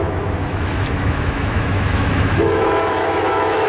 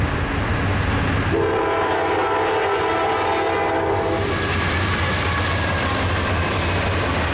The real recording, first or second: second